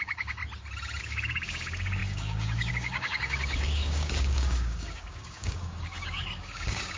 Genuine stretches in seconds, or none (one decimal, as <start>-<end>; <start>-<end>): 0.4-1.0